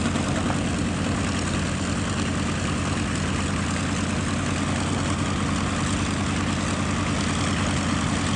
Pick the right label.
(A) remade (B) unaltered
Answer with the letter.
B